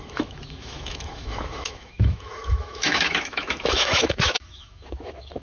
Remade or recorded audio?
remade